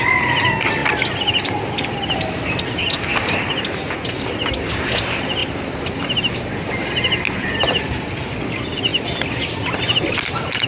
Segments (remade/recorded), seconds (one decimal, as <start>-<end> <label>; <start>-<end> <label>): 0.0-10.7 recorded